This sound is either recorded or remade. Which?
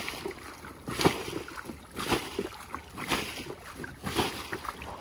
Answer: recorded